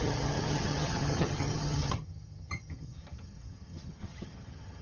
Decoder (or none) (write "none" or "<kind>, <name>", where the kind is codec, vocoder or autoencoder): vocoder, HiFi-GAN